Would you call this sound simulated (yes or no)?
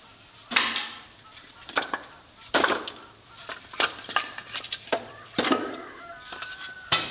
yes